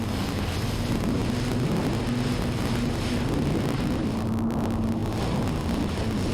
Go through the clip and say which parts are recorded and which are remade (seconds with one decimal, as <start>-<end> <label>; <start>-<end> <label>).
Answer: 0.0-6.3 recorded